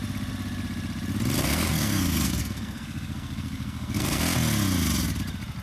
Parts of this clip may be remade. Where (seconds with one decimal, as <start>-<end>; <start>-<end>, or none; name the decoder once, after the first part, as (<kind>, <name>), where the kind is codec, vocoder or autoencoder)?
1.4-4.2 (codec, SNAC)